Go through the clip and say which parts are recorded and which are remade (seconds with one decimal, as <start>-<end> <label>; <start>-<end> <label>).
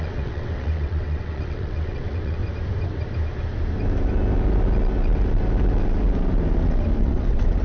0.0-2.4 remade; 2.4-7.0 recorded; 7.0-7.6 remade